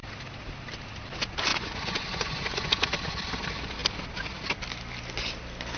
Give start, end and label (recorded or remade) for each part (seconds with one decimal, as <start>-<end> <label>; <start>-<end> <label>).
0.0-1.5 recorded; 1.5-2.9 remade; 2.9-5.8 recorded

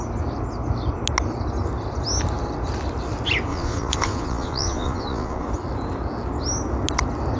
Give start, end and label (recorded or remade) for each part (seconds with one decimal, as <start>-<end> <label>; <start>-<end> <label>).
0.0-3.5 recorded; 3.5-5.5 remade; 5.5-7.4 recorded

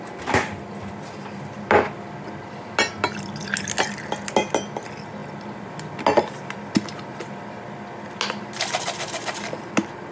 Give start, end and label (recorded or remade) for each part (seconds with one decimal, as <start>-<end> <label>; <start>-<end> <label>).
0.0-10.1 recorded

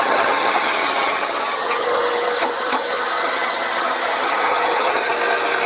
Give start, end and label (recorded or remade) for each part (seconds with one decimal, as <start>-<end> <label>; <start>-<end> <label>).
0.0-5.1 remade; 5.1-5.7 recorded

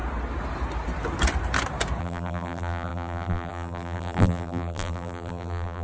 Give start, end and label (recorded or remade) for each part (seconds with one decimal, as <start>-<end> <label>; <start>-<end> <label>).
0.0-2.0 recorded; 2.0-5.8 remade

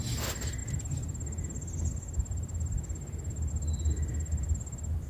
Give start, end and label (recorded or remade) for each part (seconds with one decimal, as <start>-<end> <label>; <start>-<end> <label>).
0.0-5.1 recorded